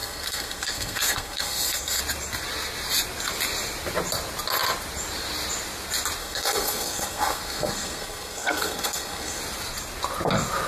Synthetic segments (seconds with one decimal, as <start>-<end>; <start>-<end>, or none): 0.0-2.0; 6.2-9.4